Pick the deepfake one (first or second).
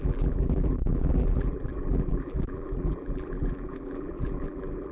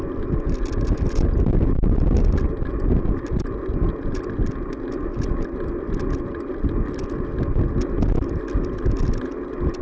first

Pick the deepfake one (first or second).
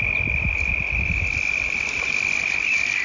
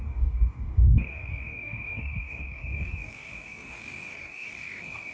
second